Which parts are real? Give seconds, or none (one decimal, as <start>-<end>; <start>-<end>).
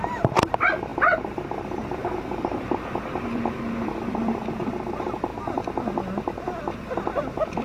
5.3-6.8